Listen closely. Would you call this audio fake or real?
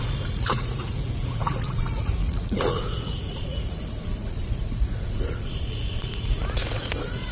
fake